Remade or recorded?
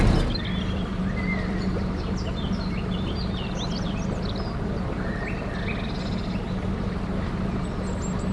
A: recorded